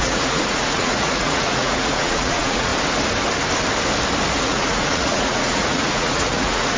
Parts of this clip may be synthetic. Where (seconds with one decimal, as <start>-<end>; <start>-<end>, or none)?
0.0-2.7; 4.4-6.8